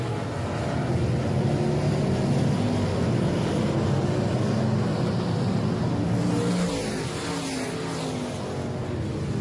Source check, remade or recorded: recorded